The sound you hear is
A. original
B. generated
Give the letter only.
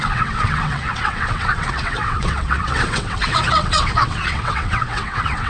B